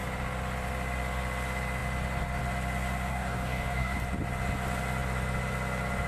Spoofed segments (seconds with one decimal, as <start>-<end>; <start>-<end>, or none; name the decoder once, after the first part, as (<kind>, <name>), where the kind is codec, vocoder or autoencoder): 3.1-4.0 (codec, DAC)